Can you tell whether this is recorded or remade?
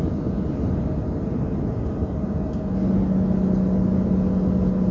recorded